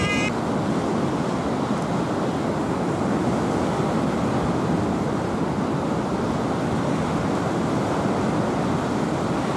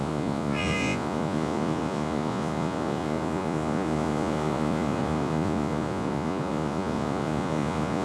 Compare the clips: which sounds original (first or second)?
first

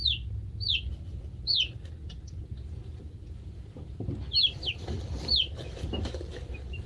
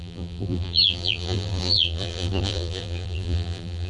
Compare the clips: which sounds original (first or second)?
first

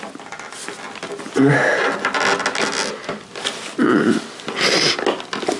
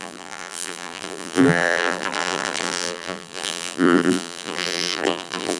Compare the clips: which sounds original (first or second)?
first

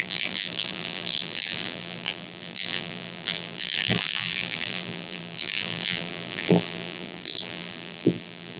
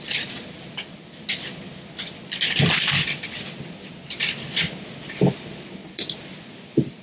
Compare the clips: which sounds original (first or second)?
second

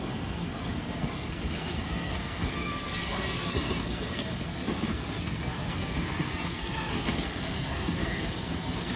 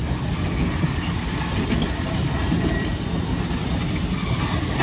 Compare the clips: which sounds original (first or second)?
second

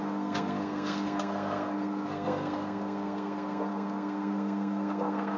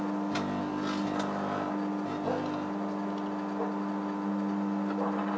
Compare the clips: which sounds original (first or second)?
second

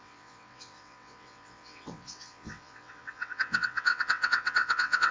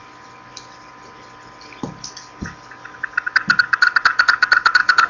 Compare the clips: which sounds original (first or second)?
second